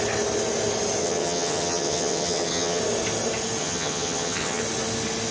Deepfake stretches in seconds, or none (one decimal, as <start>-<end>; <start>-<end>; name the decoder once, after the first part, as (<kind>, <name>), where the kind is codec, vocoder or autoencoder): 1.0-2.8 (vocoder, HiFi-GAN); 3.6-4.6